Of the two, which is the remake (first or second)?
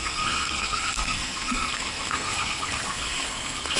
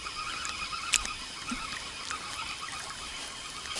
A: first